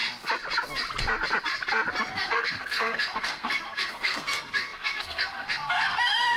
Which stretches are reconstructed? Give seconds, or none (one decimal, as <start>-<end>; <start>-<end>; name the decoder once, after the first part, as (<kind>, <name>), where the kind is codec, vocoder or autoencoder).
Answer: 2.1-6.4 (codec, SNAC)